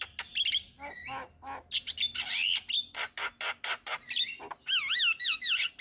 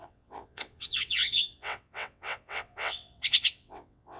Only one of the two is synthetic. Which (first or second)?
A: second